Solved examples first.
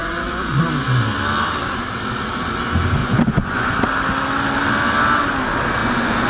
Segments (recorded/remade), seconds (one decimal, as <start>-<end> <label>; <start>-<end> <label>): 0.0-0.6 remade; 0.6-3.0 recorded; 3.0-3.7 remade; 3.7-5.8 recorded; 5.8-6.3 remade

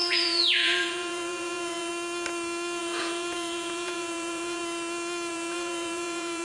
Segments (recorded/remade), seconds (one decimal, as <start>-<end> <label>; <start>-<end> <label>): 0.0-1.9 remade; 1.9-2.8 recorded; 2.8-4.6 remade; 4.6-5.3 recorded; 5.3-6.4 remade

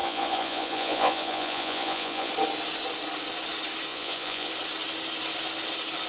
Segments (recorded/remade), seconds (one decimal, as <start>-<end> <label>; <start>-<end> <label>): 0.0-2.3 remade; 2.3-3.9 recorded; 3.9-4.5 remade; 4.5-6.1 recorded

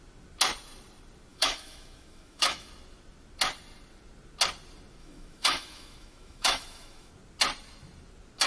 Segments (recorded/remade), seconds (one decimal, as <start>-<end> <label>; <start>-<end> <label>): 0.0-1.3 recorded; 1.3-2.7 remade; 2.7-5.0 recorded; 5.0-7.1 remade; 7.1-8.5 recorded

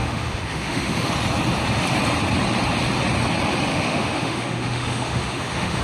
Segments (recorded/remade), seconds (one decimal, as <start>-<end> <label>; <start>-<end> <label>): 0.0-1.1 remade; 1.1-3.7 recorded; 3.7-5.8 remade